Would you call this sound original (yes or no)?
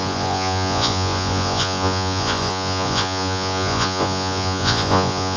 no